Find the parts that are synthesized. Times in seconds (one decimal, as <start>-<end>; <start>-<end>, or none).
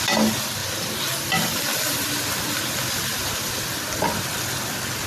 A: none